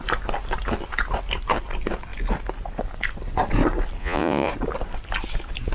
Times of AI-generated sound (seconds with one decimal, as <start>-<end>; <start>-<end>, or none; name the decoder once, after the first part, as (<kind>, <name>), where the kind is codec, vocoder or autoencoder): 4.0-4.5 (vocoder, Vocos)